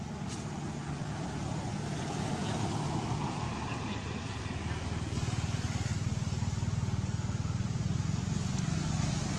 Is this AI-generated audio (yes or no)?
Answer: no